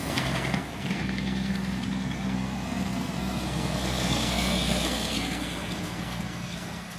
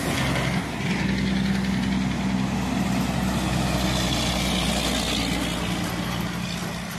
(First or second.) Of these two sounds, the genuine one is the second